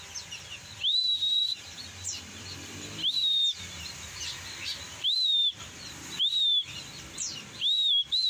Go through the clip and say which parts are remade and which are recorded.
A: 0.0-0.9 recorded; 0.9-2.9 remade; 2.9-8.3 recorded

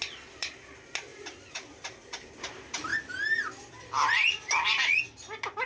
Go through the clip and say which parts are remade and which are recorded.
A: 0.0-1.1 recorded; 1.1-1.9 remade; 1.9-2.9 recorded; 2.9-4.5 remade; 4.5-5.7 recorded